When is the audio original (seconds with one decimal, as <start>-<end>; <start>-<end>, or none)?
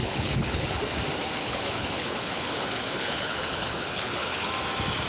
0.8-1.4; 4.5-5.1